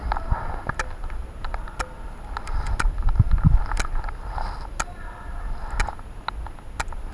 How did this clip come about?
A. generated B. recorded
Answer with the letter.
B